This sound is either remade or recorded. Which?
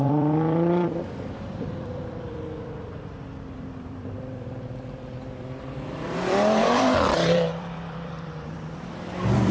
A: remade